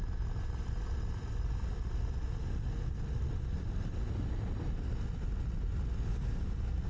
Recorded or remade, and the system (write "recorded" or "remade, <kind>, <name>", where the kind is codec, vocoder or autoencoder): recorded